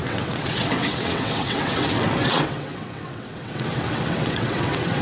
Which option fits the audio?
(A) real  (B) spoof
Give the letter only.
B